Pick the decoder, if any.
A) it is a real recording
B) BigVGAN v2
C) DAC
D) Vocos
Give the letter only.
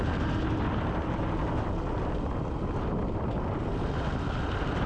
A